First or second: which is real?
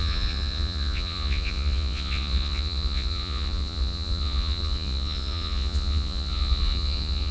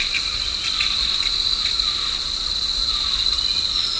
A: second